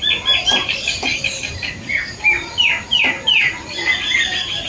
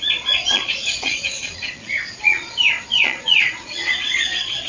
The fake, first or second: second